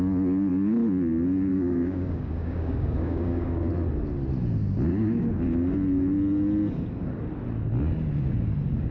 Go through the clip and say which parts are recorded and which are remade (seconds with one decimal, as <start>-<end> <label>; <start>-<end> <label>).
0.0-1.5 recorded; 1.5-3.7 remade; 3.7-4.9 recorded; 4.9-5.4 remade; 5.4-8.9 recorded